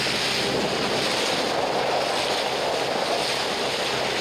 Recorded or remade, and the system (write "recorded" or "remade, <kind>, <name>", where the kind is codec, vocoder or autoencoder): recorded